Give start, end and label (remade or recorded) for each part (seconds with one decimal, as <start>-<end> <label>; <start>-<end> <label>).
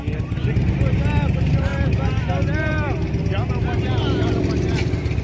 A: 0.0-5.2 recorded